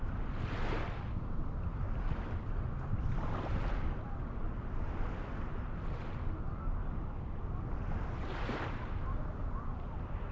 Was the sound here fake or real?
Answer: real